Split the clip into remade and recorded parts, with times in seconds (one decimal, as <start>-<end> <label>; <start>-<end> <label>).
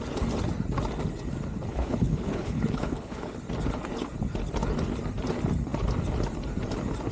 0.0-1.7 recorded; 1.7-3.4 remade; 3.4-7.1 recorded